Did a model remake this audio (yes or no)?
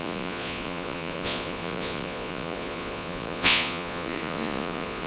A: yes